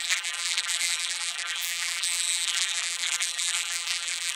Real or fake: fake